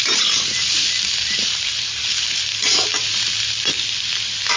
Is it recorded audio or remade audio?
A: remade